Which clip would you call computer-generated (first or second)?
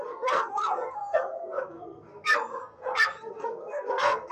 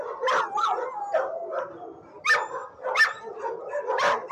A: first